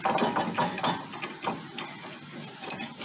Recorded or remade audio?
recorded